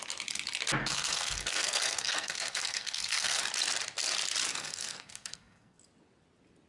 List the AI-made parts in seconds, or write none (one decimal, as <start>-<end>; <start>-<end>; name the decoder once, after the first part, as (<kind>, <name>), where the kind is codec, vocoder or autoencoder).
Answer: 0.8-3.4 (codec, SNAC); 4.5-5.8